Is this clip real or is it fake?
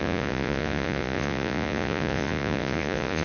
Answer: fake